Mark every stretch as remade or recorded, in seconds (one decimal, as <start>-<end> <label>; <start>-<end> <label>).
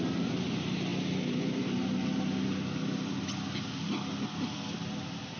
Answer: 0.0-5.4 recorded